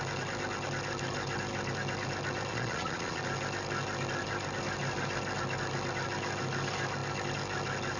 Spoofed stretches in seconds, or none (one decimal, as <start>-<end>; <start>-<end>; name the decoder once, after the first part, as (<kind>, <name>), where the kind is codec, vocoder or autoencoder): 2.5-3.2 (vocoder, Vocos)